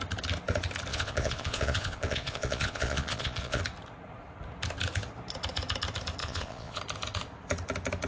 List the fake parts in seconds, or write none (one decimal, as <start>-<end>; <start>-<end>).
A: 0.9-3.6; 6.2-6.8